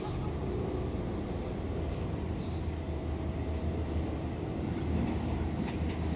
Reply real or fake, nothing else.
real